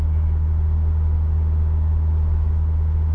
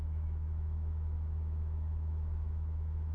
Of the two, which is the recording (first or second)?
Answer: first